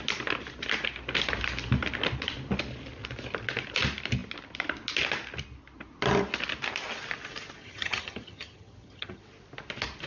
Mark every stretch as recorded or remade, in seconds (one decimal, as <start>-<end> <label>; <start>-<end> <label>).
0.0-7.6 recorded; 7.6-9.2 remade; 9.2-10.1 recorded